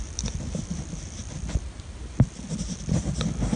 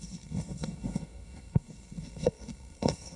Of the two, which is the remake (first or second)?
second